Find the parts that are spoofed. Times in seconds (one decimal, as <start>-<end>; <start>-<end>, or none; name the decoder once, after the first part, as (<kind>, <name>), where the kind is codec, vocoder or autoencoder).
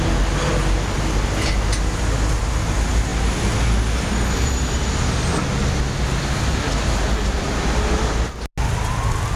none